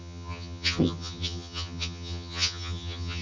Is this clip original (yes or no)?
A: no